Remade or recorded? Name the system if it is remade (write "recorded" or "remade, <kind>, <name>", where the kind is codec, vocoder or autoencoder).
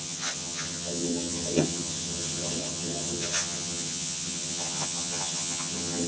remade, vocoder, HiFi-GAN